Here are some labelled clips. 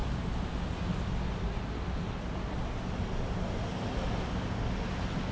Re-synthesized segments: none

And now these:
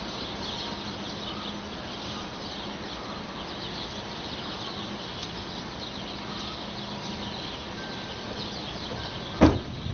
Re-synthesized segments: 5.2-6.3 (vocoder, BigVGAN v2)

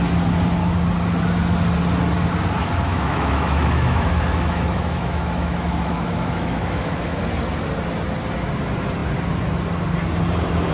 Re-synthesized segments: 2.6-7.2 (autoencoder, DAC-VAE)

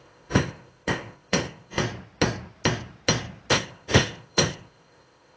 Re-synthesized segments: 0.0-1.8 (codec, ZipCodec); 3.5-5.4

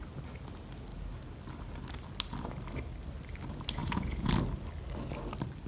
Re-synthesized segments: 3.8-4.4 (vocoder, Vocos)

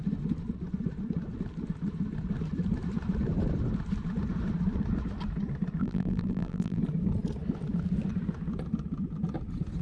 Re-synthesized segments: 5.8-6.8 (vocoder, BigVGAN v2)

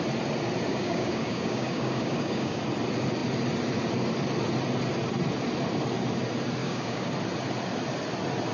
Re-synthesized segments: 0.7-2.6 (codec, DAC); 6.6-7.1

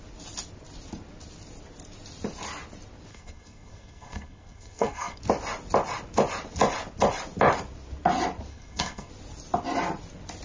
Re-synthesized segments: 3.1-5.2 (codec, SNAC); 8.5-9.1